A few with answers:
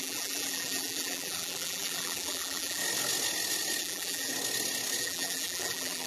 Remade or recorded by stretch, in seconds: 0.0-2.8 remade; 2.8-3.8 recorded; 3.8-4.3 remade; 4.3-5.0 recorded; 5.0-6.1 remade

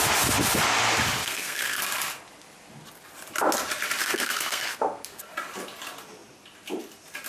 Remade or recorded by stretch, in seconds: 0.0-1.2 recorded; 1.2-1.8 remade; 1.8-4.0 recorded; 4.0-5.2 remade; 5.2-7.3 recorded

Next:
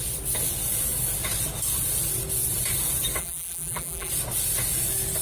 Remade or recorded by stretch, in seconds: 0.0-3.2 recorded; 3.2-4.1 remade; 4.1-5.2 recorded

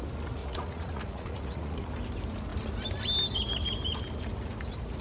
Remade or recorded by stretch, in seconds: 0.0-0.4 recorded; 0.4-1.9 remade; 1.9-5.0 recorded

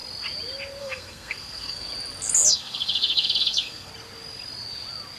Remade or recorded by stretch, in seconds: 0.0-0.8 recorded; 0.8-1.9 remade; 1.9-2.5 recorded; 2.5-3.9 remade; 3.9-5.2 recorded

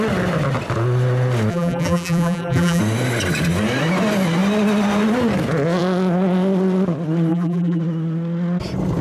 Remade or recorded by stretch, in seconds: 0.0-1.5 recorded; 1.5-2.8 remade; 2.8-7.3 recorded; 7.3-7.8 remade; 7.8-9.0 recorded

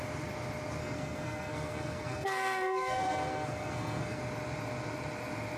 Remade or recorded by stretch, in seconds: 0.0-0.8 recorded; 0.8-4.2 remade; 4.2-5.6 recorded